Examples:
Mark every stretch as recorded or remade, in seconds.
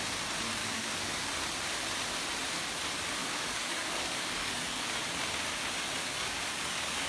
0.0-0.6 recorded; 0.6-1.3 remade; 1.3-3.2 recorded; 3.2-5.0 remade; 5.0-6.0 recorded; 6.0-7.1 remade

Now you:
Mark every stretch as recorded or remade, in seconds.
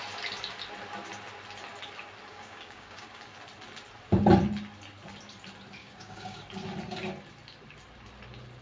0.0-2.3 recorded; 2.3-3.2 remade; 3.2-5.8 recorded; 5.8-6.4 remade; 6.4-8.6 recorded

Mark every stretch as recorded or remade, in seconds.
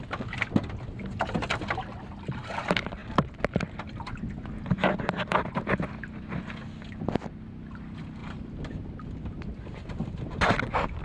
0.0-11.0 recorded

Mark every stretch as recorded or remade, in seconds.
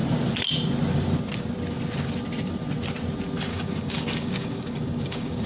0.0-3.5 recorded; 3.5-5.5 remade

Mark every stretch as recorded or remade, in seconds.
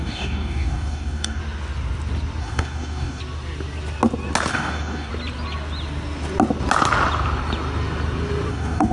0.0-1.4 remade; 1.4-2.4 recorded; 2.4-3.2 remade; 3.2-4.5 recorded; 4.5-5.1 remade; 5.1-8.5 recorded; 8.5-8.9 remade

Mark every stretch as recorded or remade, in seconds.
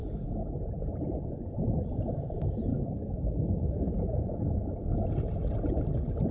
0.0-2.7 recorded; 2.7-3.9 remade; 3.9-6.3 recorded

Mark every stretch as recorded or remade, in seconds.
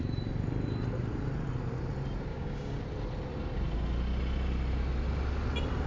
0.0-2.3 recorded; 2.3-2.8 remade; 2.8-5.9 recorded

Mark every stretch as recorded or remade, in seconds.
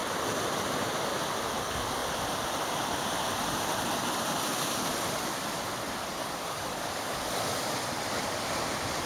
0.0-6.1 recorded; 6.1-7.4 remade; 7.4-9.1 recorded